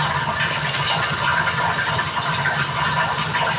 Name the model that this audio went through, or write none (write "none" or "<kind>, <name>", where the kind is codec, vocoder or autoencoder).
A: none